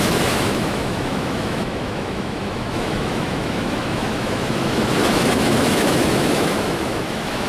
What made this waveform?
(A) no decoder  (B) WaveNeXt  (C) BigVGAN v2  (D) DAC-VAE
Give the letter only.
D